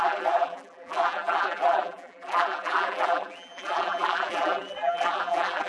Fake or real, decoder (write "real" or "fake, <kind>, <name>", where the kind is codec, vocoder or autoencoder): fake, vocoder, BigVGAN v2